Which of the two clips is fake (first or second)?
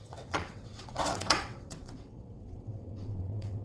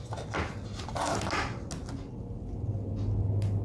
first